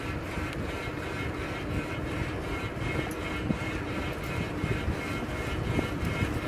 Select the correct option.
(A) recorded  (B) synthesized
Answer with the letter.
A